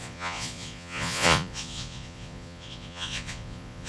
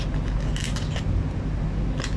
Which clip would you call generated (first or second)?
first